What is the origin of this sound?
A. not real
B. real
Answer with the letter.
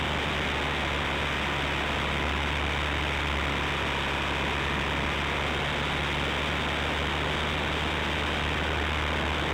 B